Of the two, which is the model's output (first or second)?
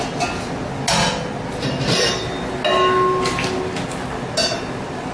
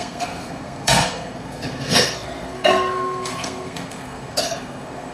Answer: second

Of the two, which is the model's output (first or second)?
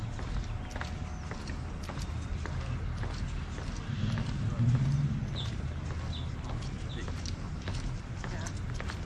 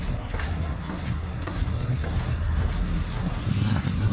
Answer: second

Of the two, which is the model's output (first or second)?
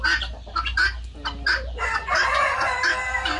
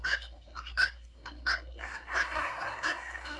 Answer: second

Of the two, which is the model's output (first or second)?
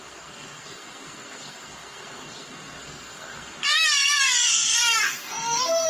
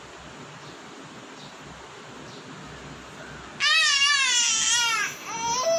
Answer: first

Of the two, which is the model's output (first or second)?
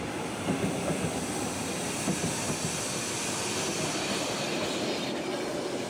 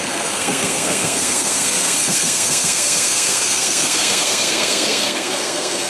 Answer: second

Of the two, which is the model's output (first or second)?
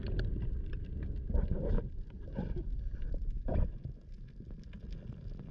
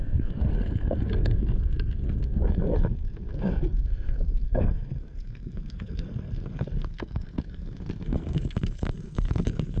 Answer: second